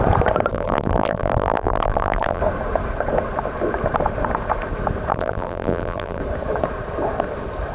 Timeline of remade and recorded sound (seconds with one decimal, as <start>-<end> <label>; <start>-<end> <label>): 0.0-0.5 recorded; 0.5-2.4 remade; 2.4-5.1 recorded; 5.1-6.2 remade; 6.2-7.7 recorded